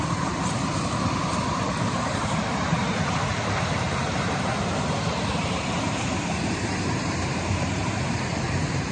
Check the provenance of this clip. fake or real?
fake